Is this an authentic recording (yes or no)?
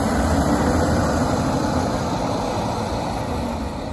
yes